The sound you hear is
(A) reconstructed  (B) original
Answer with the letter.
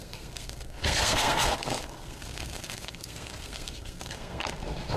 A